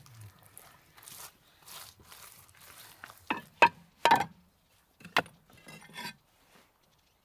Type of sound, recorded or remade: recorded